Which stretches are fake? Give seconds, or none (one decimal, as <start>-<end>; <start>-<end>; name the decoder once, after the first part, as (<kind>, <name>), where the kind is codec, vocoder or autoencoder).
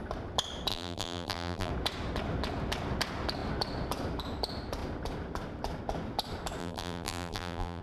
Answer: 0.7-1.7 (vocoder, BigVGAN v2); 6.6-7.8